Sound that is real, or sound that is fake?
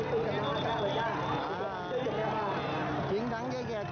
real